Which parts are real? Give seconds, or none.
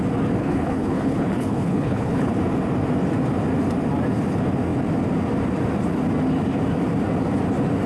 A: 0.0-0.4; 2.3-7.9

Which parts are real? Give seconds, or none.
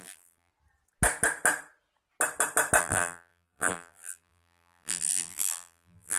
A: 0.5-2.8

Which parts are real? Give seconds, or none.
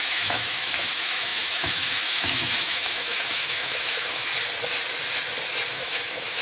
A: 4.3-5.7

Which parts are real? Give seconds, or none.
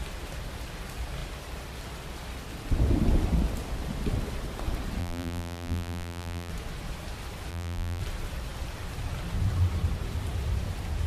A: 0.0-5.0; 6.5-7.5; 8.0-11.1